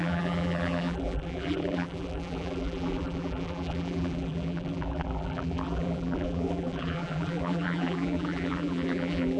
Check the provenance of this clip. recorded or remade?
remade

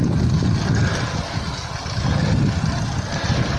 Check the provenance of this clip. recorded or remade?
recorded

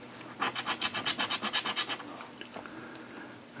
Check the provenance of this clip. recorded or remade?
recorded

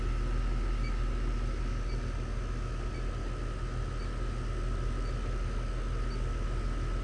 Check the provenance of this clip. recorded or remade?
recorded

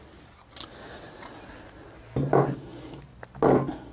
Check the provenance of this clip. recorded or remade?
recorded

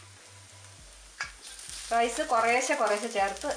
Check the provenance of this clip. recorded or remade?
recorded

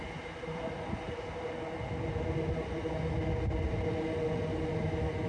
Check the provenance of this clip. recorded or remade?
recorded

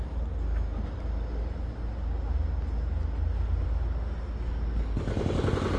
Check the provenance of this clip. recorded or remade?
recorded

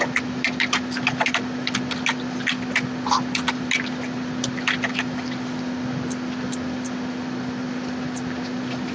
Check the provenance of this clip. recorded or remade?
recorded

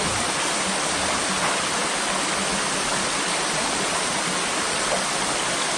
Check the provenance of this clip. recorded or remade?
recorded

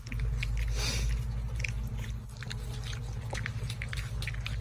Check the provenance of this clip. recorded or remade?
recorded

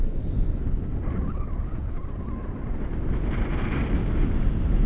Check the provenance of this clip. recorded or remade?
recorded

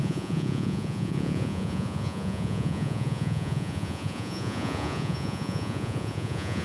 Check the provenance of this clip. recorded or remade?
remade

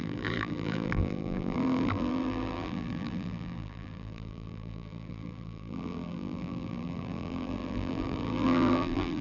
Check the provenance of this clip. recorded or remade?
remade